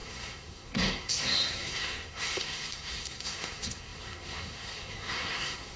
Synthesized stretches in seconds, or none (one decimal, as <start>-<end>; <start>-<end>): 0.0-5.8